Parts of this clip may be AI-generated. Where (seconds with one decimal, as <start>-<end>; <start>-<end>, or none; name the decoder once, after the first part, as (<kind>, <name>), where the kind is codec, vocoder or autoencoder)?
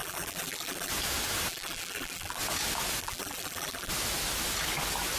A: 0.0-0.9 (vocoder, BigVGAN v2); 1.5-2.4; 3.0-3.9